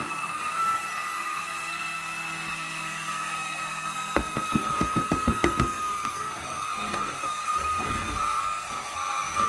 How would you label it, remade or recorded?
remade